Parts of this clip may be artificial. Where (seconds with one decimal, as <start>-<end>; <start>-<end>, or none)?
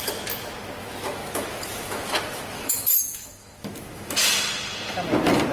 0.8-4.1